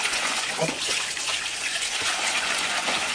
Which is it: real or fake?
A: fake